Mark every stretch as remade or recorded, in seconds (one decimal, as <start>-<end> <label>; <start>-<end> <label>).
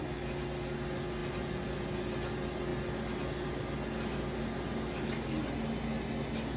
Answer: 0.0-6.6 recorded